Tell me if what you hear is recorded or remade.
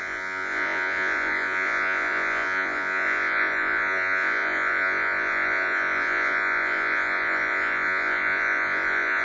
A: remade